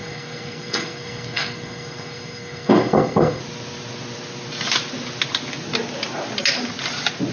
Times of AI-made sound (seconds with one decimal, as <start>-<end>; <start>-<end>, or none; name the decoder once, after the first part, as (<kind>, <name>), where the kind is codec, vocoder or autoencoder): 0.0-3.4 (codec, SNAC)